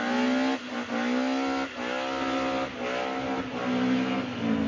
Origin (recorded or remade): recorded